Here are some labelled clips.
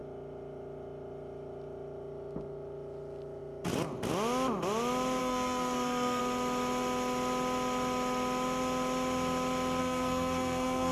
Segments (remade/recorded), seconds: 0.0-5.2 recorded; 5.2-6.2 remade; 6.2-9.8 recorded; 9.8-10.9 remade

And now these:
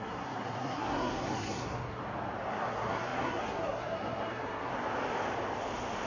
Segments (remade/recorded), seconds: 0.0-2.0 remade; 2.0-2.5 recorded; 2.5-4.7 remade; 4.7-6.1 recorded

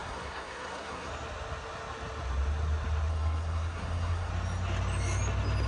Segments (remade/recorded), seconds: 0.0-1.1 remade; 1.1-3.1 recorded; 3.1-4.3 remade; 4.3-5.7 recorded

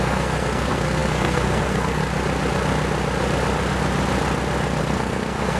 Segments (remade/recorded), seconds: 0.0-2.0 remade; 2.0-4.8 recorded; 4.8-5.6 remade

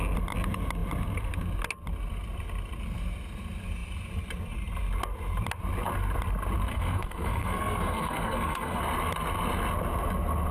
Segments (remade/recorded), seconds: 0.0-6.7 recorded; 6.7-8.8 remade; 8.8-10.5 recorded

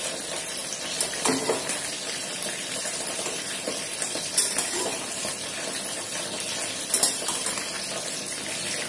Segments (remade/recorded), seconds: 0.0-8.9 recorded

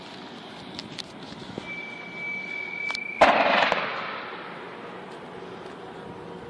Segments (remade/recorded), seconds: 0.0-6.5 recorded